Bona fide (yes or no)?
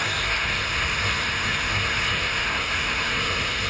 no